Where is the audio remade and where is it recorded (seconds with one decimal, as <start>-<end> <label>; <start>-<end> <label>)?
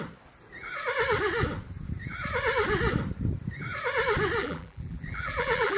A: 0.0-4.4 recorded; 4.4-5.8 remade